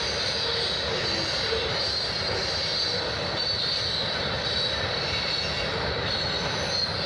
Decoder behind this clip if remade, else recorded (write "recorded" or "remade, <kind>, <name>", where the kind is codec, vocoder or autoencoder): recorded